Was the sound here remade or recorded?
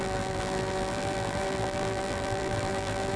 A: remade